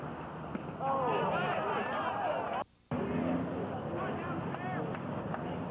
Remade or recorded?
recorded